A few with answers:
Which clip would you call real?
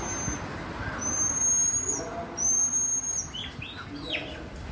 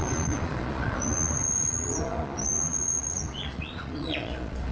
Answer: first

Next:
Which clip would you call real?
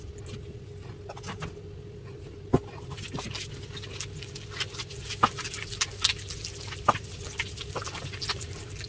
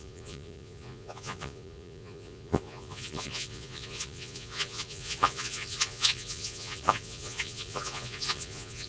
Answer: first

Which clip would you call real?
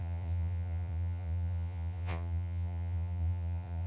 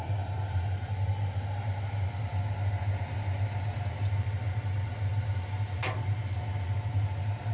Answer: second